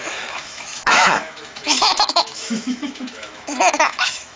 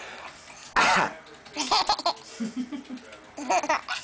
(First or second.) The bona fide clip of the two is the second